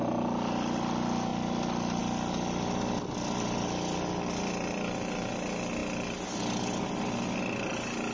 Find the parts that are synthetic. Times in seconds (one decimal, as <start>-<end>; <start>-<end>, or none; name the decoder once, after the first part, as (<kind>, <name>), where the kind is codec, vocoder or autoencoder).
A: none